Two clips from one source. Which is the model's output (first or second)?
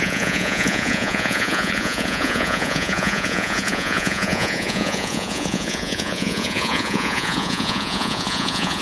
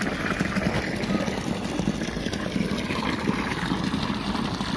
first